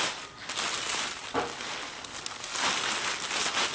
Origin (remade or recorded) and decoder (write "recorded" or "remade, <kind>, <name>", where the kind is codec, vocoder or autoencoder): recorded